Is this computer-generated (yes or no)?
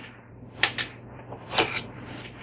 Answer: yes